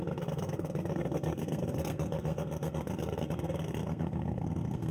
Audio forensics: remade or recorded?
remade